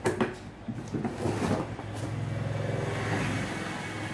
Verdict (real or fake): real